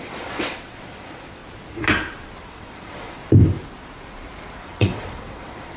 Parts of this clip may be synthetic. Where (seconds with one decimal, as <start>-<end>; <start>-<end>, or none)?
0.0-1.4; 2.4-3.2; 4.6-5.8